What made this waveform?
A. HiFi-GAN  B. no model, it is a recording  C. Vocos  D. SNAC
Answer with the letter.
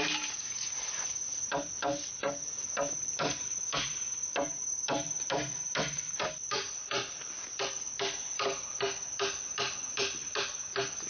B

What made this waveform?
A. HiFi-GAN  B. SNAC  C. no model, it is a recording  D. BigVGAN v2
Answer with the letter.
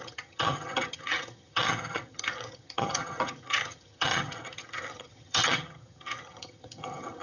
A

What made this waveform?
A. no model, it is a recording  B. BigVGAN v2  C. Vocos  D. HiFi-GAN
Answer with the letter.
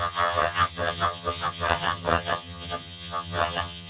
D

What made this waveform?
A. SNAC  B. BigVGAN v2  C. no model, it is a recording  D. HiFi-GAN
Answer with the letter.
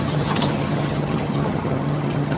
D